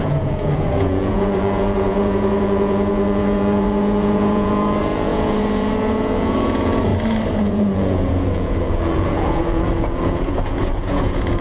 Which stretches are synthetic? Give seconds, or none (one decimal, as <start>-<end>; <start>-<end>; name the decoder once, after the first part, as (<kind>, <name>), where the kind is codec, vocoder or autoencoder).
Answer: 0.0-6.9 (vocoder, Vocos); 7.4-11.4